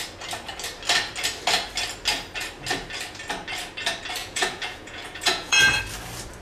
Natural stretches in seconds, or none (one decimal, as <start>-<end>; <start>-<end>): 0.0-4.2; 5.8-6.4